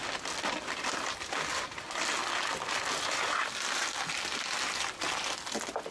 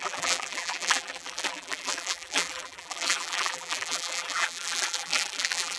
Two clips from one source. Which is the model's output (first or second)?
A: second